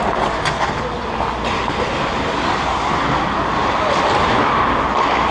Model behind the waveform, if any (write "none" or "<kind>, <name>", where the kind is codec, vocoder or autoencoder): none